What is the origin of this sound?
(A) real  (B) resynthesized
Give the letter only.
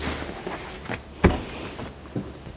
A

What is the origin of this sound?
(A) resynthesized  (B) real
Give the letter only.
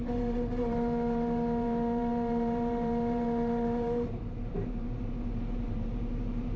A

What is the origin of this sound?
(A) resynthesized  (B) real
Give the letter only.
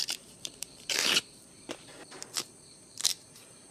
A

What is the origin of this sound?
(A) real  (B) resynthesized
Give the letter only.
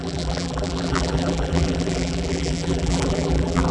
B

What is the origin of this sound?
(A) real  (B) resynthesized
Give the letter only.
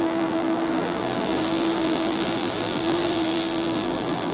B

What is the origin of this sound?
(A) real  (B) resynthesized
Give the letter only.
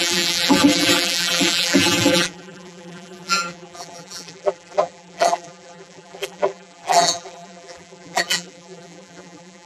B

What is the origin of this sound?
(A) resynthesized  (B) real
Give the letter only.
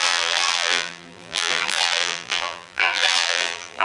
A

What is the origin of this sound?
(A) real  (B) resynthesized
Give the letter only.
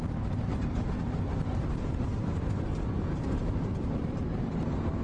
B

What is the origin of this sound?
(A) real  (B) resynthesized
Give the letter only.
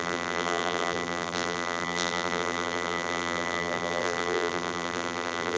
B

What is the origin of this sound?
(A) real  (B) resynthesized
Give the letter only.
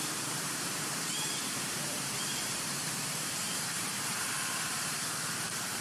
B